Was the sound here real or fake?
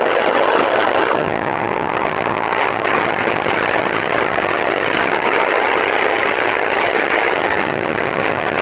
fake